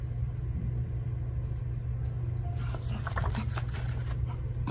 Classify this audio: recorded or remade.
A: recorded